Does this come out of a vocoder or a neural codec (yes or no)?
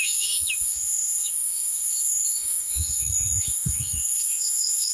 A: yes